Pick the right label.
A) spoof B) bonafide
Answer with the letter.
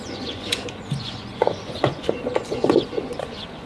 A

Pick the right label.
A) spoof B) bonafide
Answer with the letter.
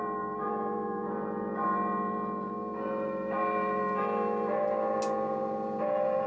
B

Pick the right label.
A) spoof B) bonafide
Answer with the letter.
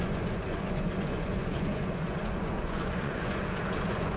A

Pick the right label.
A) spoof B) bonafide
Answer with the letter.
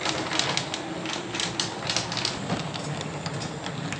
B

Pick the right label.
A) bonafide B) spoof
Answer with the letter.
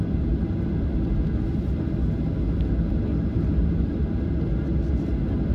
A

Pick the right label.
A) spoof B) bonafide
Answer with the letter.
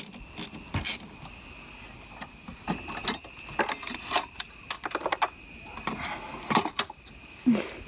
B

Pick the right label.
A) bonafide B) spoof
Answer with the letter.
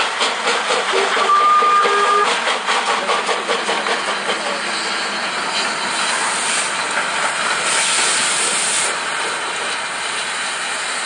A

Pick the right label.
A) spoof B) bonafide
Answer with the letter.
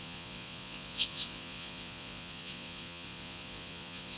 A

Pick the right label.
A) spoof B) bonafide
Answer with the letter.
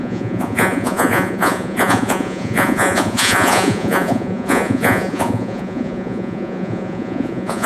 A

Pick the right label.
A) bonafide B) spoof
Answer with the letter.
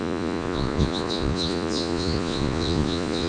B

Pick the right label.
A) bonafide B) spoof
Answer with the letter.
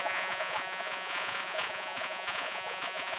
B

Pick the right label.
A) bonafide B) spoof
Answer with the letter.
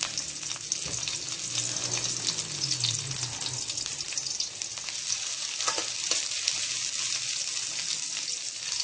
A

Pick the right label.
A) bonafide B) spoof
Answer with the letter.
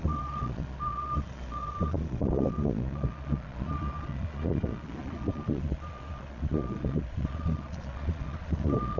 B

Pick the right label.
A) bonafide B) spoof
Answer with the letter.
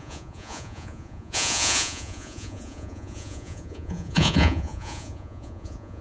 B